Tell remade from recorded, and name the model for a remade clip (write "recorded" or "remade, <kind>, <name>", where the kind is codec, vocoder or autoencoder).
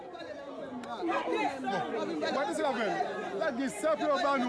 recorded